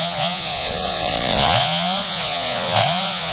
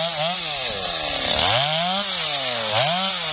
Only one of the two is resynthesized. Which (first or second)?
first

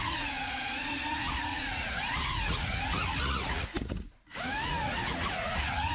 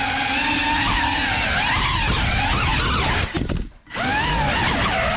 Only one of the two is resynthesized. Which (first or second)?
first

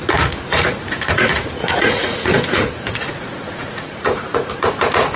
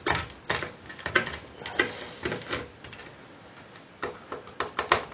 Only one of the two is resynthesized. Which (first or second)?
first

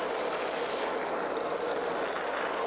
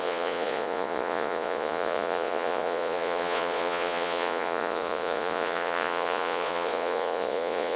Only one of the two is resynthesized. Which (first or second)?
second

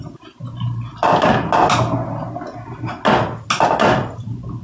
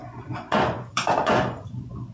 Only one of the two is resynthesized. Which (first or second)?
second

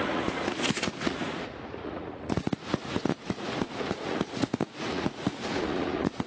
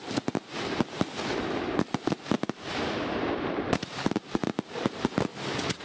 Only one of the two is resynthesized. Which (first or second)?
first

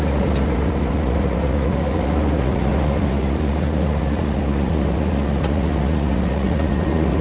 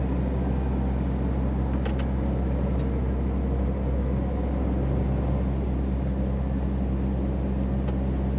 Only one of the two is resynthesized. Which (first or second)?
first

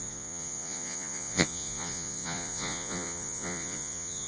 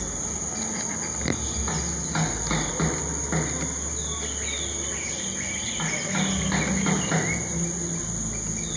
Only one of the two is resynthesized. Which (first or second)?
first